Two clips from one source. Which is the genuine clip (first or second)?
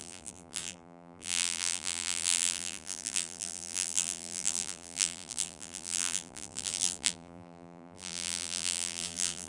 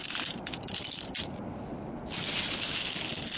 second